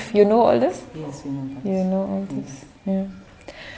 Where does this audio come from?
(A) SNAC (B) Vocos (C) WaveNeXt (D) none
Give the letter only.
D